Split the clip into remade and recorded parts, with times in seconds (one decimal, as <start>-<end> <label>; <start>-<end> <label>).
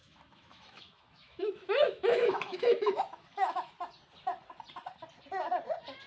0.0-3.7 remade; 3.7-6.1 recorded